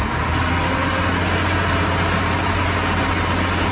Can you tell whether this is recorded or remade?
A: recorded